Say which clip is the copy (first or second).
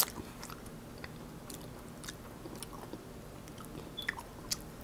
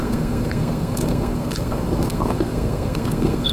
second